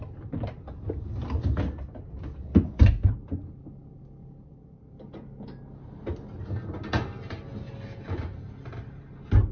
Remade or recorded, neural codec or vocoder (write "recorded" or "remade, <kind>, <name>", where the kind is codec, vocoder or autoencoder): recorded